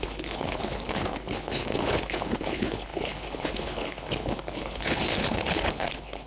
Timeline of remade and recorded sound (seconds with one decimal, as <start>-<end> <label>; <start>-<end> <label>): 0.0-6.3 remade